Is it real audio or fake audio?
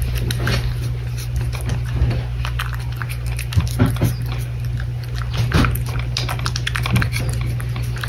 real